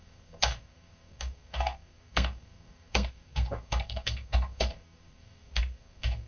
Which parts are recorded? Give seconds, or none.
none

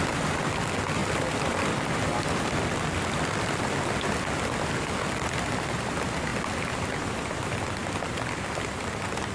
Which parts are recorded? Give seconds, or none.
0.0-1.0; 3.7-6.3; 8.8-9.3